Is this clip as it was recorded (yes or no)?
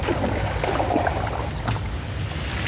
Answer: yes